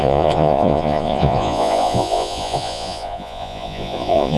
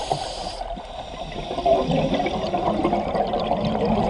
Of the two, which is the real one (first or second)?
second